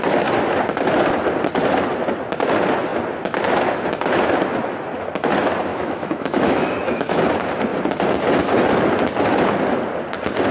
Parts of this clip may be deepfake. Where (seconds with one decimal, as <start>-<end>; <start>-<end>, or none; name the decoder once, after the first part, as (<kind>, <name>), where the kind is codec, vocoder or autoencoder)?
5.7-7.2 (autoencoder, DAC-VAE)